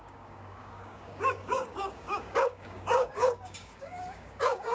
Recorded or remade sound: remade